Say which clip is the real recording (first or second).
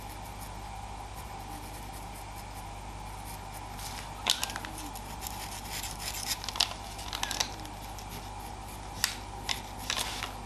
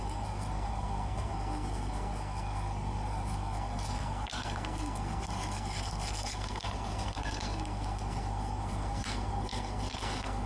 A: first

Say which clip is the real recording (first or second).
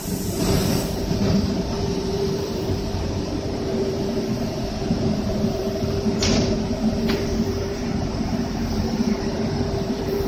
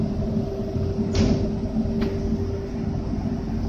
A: second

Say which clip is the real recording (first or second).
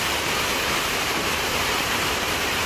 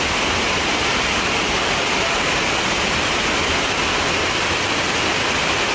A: second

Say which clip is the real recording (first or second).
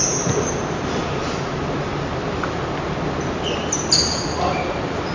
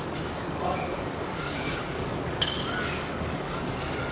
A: first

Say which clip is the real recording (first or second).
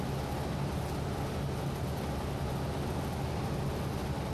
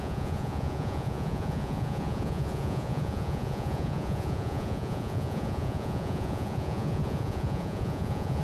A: first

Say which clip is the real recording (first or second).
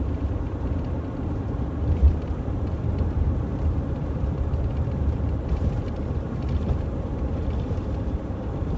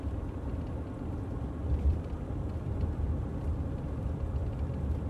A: second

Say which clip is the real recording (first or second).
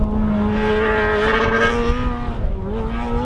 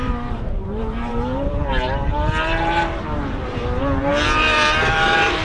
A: first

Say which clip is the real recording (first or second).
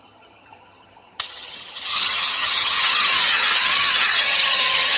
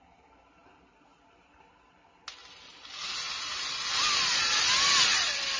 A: second